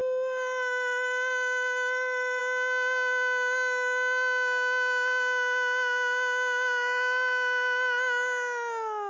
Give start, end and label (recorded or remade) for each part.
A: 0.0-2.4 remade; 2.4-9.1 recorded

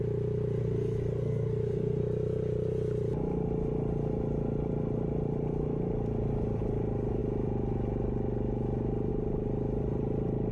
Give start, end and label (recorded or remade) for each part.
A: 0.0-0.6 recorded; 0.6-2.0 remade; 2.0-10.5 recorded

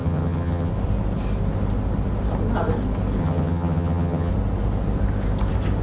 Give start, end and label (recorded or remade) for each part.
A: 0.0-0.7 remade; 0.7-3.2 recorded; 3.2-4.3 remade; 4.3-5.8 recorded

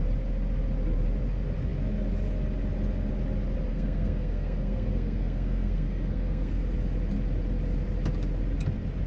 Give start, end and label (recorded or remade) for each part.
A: 0.0-3.7 recorded; 3.7-6.6 remade; 6.6-9.1 recorded

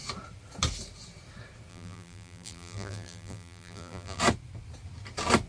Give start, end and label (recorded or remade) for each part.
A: 0.0-1.7 recorded; 1.7-4.2 remade; 4.2-5.5 recorded